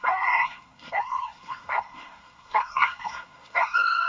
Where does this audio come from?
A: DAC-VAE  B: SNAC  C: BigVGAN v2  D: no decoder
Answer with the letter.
B